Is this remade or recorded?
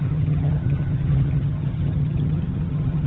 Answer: remade